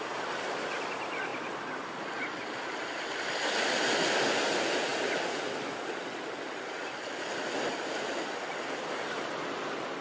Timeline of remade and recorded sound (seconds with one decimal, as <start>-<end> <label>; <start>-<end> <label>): 0.0-10.0 recorded